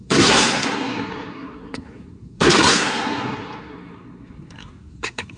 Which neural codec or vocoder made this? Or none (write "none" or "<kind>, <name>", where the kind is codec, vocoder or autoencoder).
codec, SNAC